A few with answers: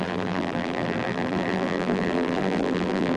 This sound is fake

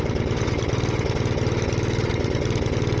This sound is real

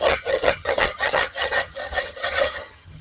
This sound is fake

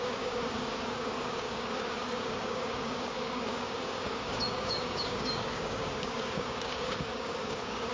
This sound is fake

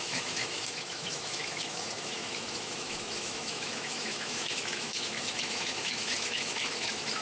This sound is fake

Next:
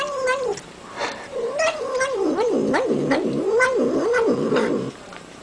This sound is fake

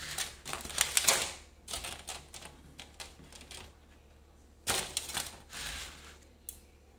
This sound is real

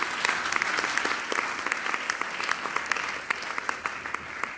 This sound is real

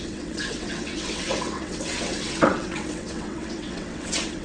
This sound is fake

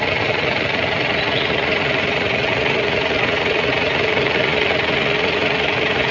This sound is fake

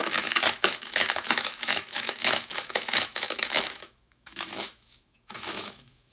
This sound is fake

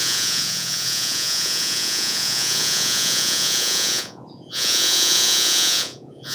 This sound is fake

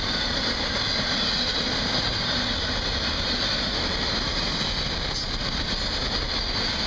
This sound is real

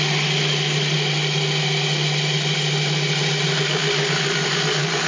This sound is real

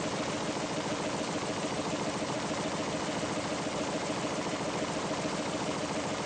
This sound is real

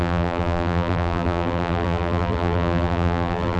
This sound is fake